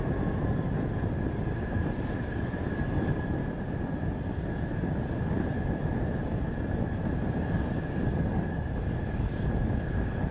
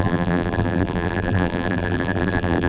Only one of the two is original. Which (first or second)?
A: first